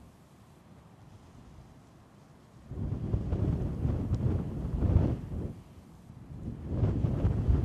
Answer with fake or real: real